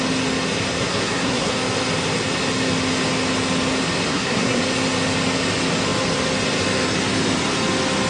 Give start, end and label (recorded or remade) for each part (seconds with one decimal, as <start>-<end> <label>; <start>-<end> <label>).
0.0-0.8 recorded; 0.8-1.5 remade; 1.5-4.1 recorded; 4.1-4.6 remade; 4.6-8.1 recorded